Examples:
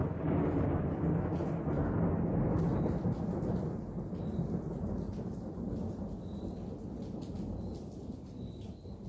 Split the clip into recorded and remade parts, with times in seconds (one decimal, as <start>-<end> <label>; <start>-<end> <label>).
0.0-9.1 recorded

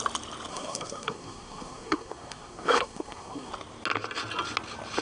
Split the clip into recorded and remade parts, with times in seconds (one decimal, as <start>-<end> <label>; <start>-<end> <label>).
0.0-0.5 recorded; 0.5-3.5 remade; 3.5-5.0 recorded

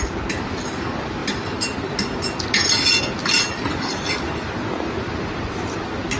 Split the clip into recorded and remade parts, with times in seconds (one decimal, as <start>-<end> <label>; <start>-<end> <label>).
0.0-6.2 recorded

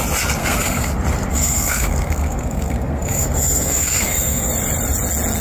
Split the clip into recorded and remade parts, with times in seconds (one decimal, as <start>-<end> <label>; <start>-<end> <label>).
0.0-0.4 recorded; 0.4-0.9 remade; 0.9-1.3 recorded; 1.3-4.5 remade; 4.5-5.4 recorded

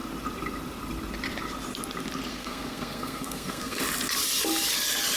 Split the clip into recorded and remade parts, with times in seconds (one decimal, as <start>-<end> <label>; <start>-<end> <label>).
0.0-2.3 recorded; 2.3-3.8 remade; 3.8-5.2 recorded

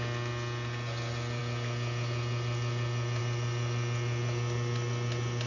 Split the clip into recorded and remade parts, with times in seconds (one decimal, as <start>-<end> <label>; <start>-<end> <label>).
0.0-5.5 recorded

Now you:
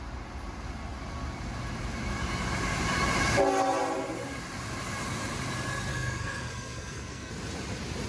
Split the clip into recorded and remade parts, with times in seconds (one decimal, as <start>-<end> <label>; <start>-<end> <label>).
0.0-5.9 recorded; 5.9-7.3 remade; 7.3-8.1 recorded

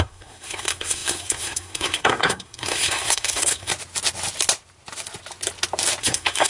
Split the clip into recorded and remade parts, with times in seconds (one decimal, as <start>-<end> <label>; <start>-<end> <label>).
0.0-3.7 remade; 3.7-6.0 recorded; 6.0-6.5 remade